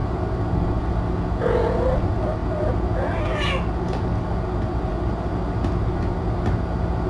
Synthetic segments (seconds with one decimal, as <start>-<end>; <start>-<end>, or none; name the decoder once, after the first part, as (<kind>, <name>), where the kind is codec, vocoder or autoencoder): none